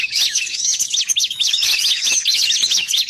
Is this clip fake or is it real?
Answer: fake